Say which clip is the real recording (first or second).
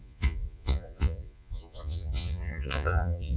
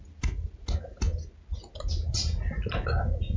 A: second